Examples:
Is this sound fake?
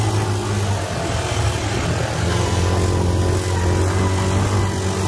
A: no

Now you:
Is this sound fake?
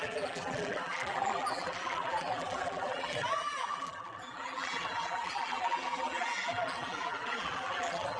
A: yes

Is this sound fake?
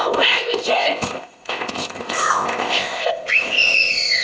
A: yes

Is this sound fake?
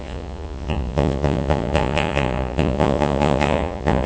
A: yes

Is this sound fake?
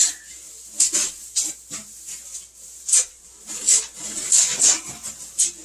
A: no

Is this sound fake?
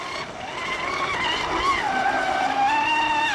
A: no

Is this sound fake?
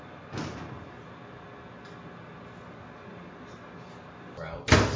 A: no